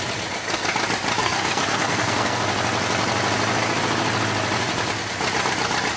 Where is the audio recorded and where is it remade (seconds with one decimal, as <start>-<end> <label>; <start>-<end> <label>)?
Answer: 0.0-1.2 recorded; 1.2-2.4 remade; 2.4-6.0 recorded